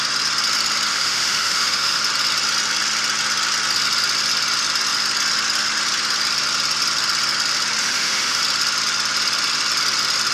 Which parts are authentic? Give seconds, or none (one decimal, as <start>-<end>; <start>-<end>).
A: 0.0-0.9; 2.0-7.8; 8.4-10.3